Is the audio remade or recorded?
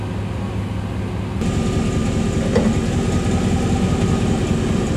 recorded